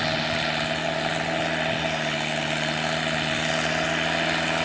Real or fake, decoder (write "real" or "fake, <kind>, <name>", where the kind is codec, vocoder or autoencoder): real